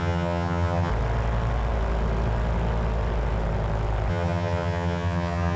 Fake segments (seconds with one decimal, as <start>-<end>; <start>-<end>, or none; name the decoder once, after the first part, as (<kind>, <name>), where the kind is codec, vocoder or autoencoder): 0.0-0.9 (vocoder, HiFi-GAN); 4.1-5.6